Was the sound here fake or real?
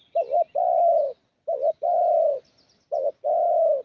real